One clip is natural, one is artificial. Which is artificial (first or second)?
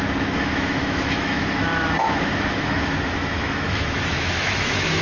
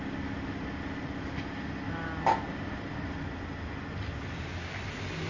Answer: first